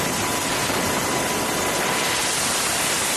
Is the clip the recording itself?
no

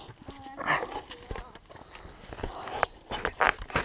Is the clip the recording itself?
yes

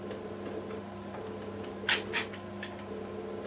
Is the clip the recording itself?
yes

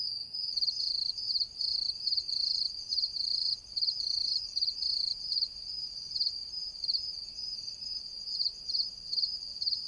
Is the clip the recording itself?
no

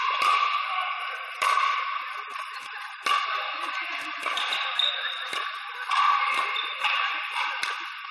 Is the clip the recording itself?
yes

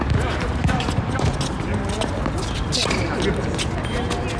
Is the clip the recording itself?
yes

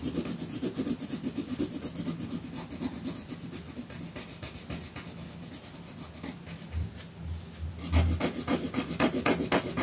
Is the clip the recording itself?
yes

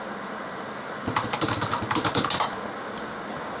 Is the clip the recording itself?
yes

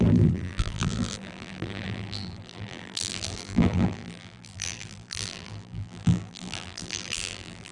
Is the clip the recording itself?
no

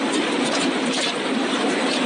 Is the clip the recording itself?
no